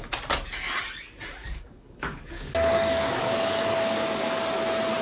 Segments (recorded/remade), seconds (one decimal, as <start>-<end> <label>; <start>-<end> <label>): 0.0-1.4 recorded; 1.4-4.4 remade; 4.4-5.0 recorded